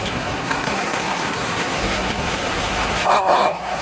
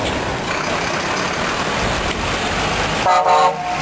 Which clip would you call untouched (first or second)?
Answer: second